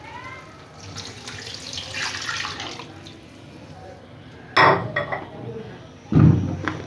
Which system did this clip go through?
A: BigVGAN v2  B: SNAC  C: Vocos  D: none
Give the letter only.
D